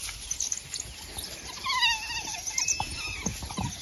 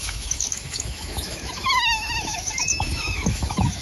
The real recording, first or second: first